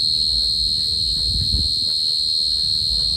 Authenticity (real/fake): real